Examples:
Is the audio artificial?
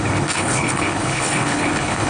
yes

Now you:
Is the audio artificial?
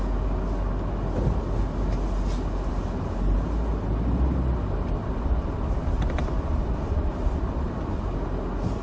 no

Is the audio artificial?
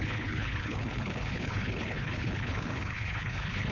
yes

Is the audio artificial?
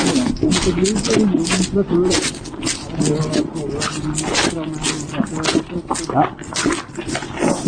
no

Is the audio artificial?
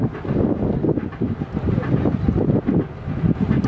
no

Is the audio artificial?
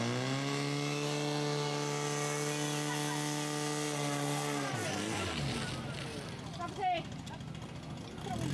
no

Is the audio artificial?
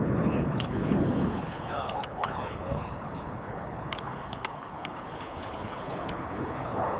yes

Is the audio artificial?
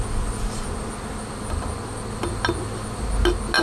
no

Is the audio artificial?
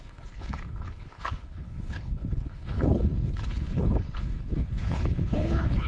yes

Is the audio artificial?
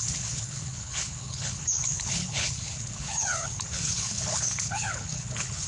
yes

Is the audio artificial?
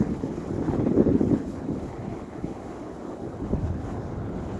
yes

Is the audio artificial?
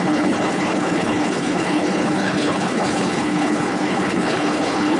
yes